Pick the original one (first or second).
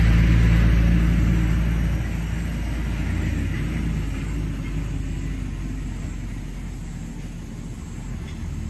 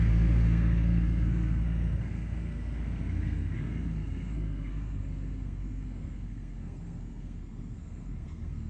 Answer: first